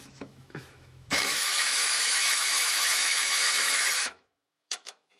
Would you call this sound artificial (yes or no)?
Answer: yes